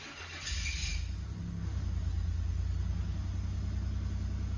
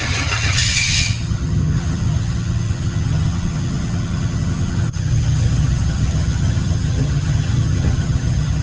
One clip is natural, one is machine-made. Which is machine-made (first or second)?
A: second